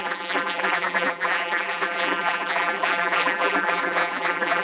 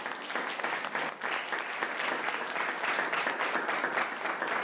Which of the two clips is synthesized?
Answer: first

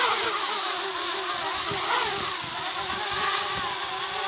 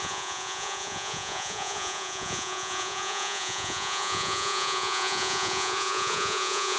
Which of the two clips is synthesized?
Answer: second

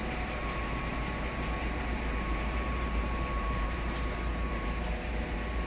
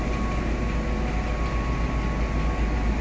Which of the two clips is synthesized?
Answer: first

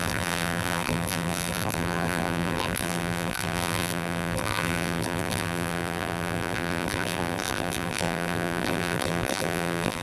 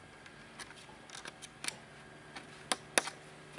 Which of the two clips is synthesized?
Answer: first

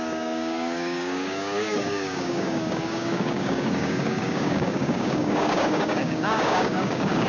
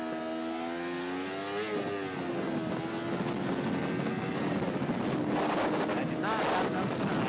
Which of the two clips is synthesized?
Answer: first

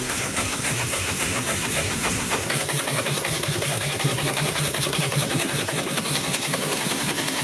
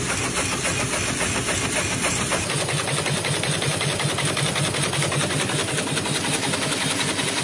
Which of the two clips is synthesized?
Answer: first